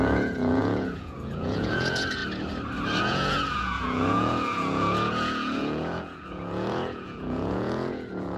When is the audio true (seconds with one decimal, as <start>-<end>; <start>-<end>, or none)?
2.2-3.0